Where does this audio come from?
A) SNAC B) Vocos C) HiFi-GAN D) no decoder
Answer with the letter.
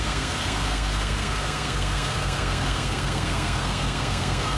A